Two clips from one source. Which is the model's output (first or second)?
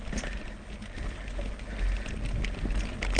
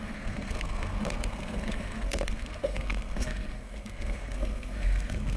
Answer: second